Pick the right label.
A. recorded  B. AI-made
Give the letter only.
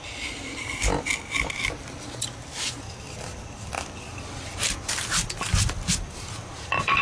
A